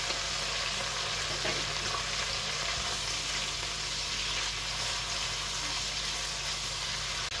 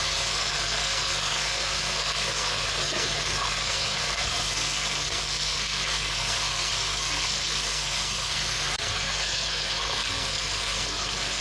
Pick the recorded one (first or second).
first